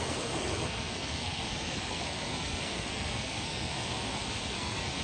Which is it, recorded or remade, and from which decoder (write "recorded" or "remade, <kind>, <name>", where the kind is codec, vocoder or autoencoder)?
remade, codec, SNAC